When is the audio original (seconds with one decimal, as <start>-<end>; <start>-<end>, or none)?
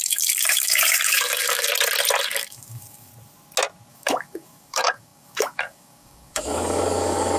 1.7-2.2; 3.1-3.9